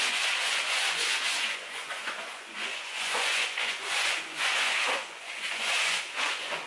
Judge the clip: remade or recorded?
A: remade